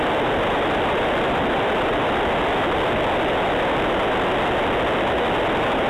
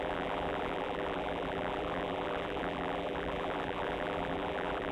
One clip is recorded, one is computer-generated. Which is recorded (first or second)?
first